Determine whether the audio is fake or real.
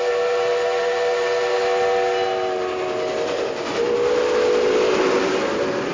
real